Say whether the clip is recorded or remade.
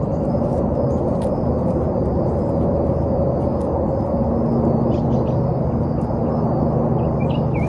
recorded